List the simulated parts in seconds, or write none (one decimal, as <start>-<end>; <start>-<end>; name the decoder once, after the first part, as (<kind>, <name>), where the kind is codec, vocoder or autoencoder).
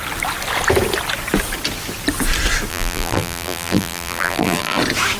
2.7-4.8 (vocoder, BigVGAN v2)